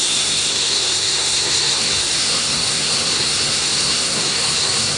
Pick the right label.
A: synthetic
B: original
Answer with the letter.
A